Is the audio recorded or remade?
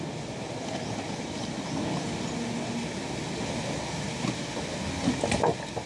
recorded